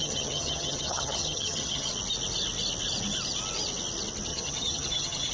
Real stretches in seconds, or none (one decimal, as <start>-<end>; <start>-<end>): 1.9-4.3